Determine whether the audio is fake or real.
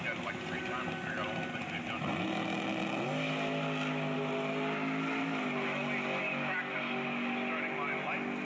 real